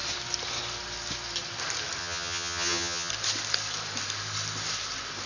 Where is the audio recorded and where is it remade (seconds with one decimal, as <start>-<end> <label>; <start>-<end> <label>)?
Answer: 0.0-2.0 recorded; 2.0-3.1 remade; 3.1-5.3 recorded